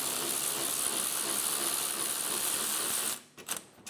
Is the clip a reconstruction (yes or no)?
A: no